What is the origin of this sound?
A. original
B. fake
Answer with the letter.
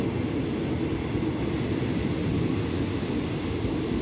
A